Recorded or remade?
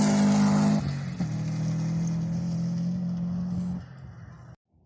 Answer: recorded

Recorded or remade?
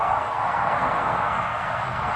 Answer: remade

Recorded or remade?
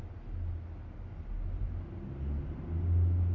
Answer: recorded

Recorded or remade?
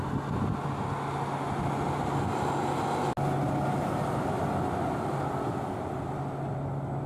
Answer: recorded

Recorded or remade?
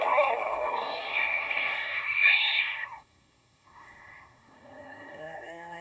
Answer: remade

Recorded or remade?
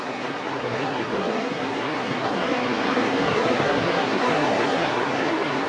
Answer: remade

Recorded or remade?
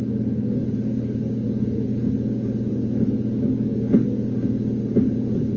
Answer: recorded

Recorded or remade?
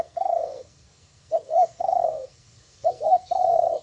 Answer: remade